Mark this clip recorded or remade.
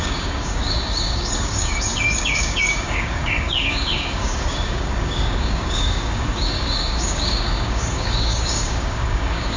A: remade